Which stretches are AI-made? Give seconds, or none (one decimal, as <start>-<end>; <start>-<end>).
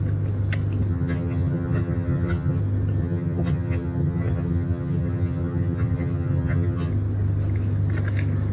0.9-2.6; 3.0-6.9